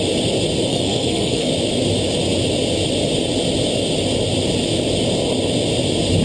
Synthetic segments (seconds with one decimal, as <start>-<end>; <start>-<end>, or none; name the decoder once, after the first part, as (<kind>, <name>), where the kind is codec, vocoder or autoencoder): 0.7-1.5 (codec, SNAC)